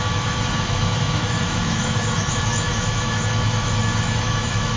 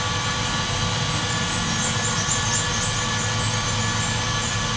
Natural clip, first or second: second